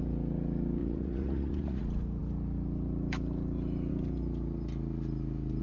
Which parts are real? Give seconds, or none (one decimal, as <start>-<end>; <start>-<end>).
0.0-0.8; 1.8-5.6